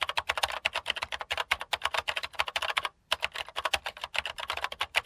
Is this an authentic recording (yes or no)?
yes